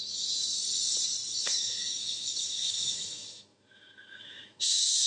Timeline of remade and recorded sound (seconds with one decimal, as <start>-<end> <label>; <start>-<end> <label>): 0.0-0.6 remade; 0.6-1.4 recorded; 1.4-5.1 remade